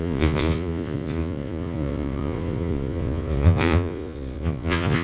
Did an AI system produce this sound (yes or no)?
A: yes